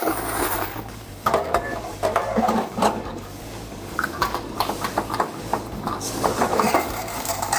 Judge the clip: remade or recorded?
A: remade